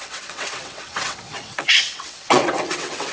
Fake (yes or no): yes